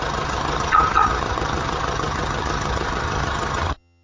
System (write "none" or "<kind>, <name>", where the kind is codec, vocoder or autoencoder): vocoder, HiFi-GAN